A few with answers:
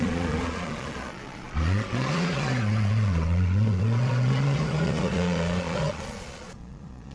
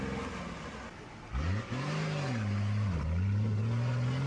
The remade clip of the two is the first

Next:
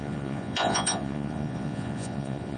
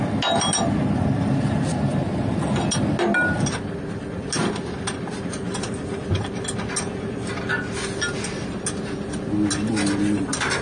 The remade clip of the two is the first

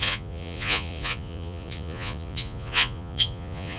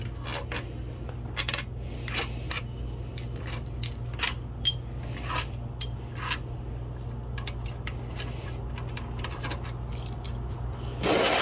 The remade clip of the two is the first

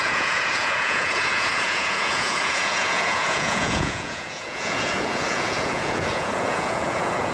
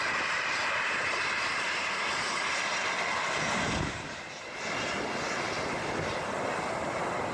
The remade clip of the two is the first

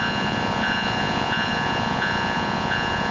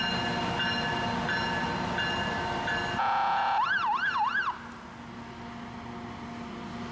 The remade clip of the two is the first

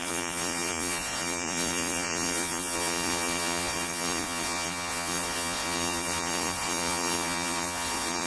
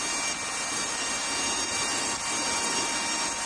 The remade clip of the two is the first